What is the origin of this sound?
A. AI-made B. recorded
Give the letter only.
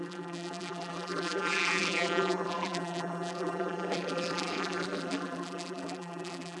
A